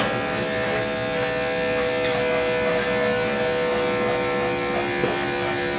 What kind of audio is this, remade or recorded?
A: recorded